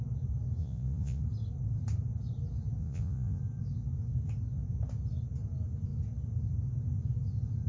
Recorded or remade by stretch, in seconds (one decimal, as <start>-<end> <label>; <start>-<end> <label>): 0.0-0.6 recorded; 0.6-1.2 remade; 1.2-2.8 recorded; 2.8-3.4 remade; 3.4-7.7 recorded

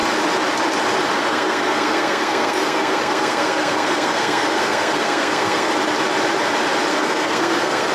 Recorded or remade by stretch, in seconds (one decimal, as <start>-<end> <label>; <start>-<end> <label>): 0.0-1.2 recorded; 1.2-5.7 remade; 5.7-6.9 recorded; 6.9-7.9 remade

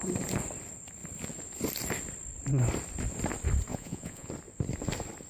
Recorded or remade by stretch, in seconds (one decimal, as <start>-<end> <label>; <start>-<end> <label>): 0.0-3.7 recorded; 3.7-4.3 remade; 4.3-5.3 recorded

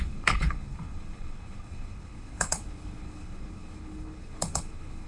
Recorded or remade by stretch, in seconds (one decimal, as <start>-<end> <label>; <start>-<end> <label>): 0.0-5.1 remade

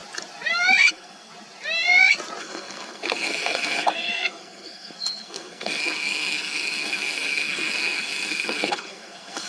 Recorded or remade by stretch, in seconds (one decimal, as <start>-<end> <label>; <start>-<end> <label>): 0.0-0.9 recorded; 0.9-1.3 remade; 1.3-2.4 recorded; 2.4-9.5 remade

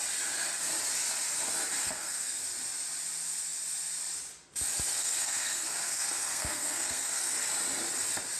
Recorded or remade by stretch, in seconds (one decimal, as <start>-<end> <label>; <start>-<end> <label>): 0.0-1.8 recorded; 1.8-2.4 remade; 2.4-4.9 recorded; 4.9-7.3 remade; 7.3-8.4 recorded